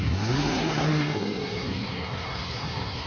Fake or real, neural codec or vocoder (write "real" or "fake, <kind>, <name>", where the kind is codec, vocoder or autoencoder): fake, codec, SNAC